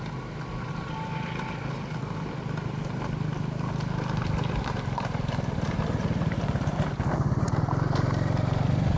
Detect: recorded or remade recorded